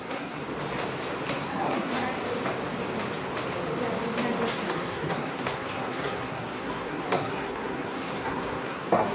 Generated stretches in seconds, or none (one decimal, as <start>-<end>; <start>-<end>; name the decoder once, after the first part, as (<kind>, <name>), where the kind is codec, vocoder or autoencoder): 0.0-0.4 (codec, SNAC); 1.3-1.9; 4.5-9.1